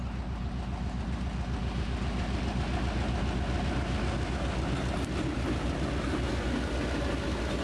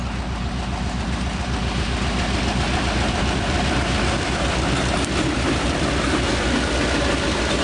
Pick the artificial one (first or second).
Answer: second